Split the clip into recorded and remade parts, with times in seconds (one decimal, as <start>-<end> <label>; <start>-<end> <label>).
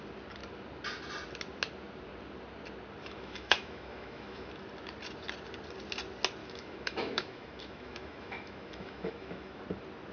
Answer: 0.0-3.0 recorded; 3.0-4.5 remade; 4.5-6.4 recorded; 6.4-9.6 remade; 9.6-10.1 recorded